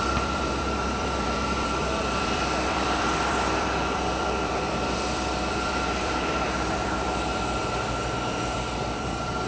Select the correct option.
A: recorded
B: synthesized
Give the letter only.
B